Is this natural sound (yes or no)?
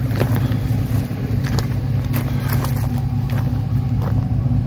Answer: yes